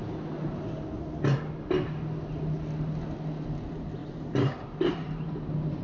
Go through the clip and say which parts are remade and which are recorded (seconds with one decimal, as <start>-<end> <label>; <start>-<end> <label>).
0.0-4.0 recorded; 4.0-5.8 remade